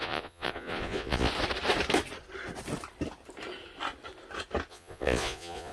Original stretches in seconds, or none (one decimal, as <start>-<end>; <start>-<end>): 1.3-4.7